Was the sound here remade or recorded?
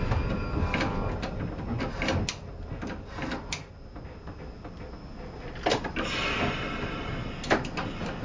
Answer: recorded